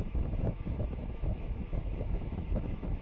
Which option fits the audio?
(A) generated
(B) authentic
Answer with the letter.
A